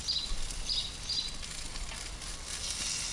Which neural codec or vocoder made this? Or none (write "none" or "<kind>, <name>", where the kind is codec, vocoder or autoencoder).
none